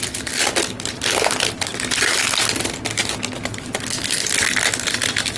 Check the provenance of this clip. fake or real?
real